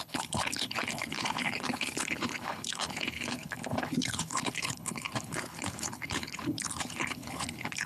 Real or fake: fake